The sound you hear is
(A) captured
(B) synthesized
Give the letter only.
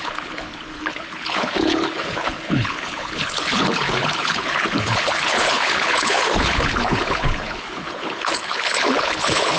B